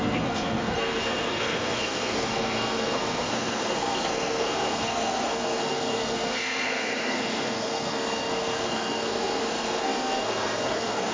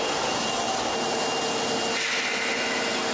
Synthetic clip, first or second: first